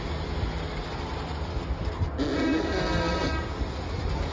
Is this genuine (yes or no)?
yes